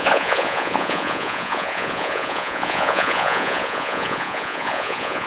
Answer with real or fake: fake